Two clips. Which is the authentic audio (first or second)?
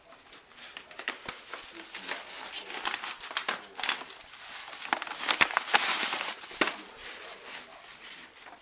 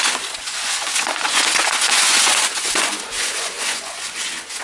first